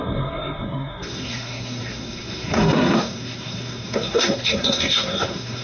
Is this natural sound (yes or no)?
no